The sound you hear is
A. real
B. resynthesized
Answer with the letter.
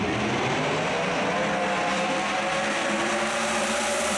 B